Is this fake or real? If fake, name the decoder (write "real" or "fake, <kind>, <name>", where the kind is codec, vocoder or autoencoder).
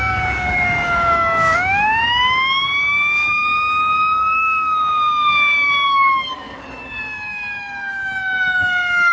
fake, codec, DAC